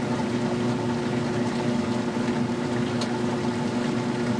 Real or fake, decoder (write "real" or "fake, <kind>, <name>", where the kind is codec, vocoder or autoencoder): real